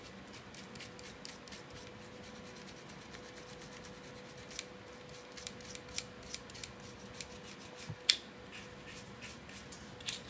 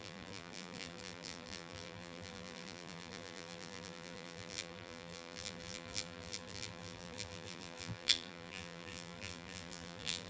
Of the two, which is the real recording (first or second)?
first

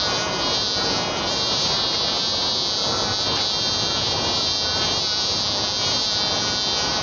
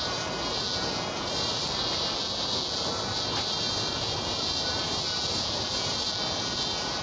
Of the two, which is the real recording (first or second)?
first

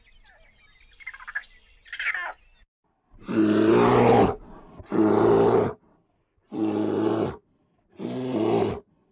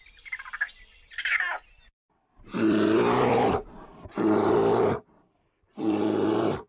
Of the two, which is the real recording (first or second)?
first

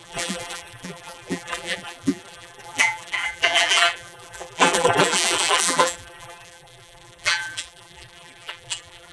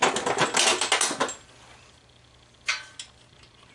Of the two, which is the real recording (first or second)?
second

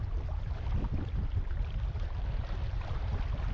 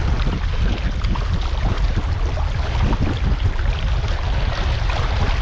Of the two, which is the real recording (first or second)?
second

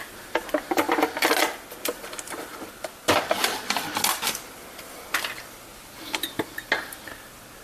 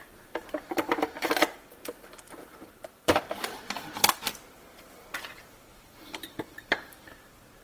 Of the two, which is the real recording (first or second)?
first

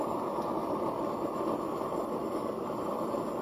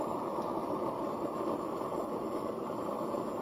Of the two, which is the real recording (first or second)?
first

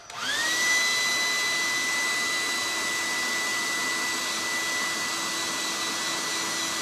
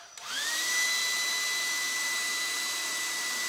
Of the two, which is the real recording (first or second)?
first